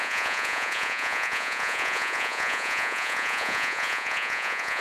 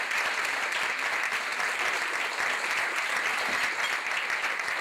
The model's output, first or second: first